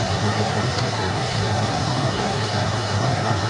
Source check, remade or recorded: remade